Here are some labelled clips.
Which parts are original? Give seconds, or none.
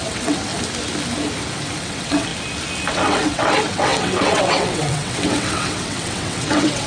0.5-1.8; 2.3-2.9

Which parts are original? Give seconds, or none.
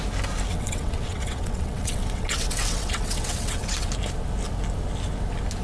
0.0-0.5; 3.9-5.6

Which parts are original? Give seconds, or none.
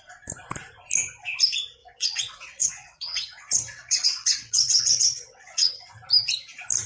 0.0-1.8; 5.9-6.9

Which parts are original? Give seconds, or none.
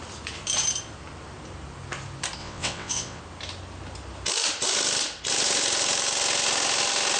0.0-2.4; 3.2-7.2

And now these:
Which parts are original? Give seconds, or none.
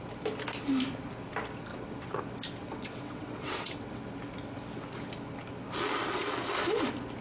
0.0-1.7; 2.2-2.6; 4.0-7.2